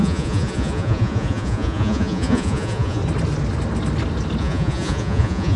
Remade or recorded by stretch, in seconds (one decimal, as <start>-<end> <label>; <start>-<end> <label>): 0.0-3.0 remade; 3.0-4.4 recorded; 4.4-5.6 remade